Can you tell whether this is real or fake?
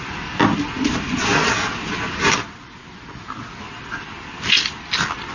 real